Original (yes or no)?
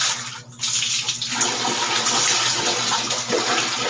yes